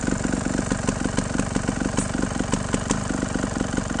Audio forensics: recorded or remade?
recorded